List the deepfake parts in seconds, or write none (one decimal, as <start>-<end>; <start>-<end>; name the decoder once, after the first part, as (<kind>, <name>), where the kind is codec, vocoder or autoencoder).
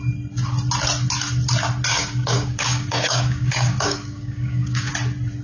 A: 1.9-4.9 (codec, DAC)